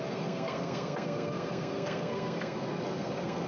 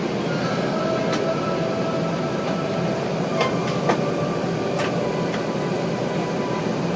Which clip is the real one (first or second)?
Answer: second